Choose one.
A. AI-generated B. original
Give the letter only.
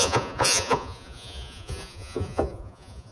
A